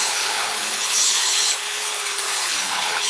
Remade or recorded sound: remade